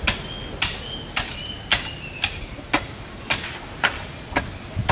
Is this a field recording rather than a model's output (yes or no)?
yes